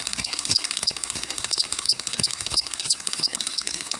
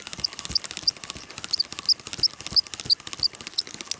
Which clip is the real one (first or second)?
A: second